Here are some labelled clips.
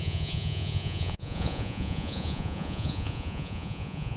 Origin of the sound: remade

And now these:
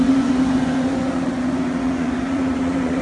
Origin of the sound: remade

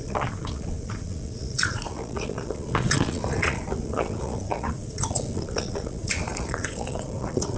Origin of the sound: remade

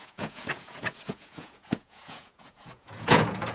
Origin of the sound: remade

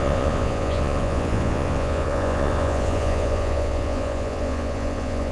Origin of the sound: remade